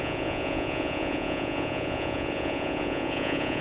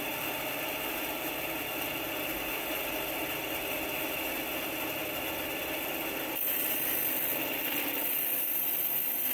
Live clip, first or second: second